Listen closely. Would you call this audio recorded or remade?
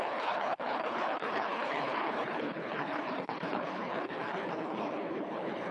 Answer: remade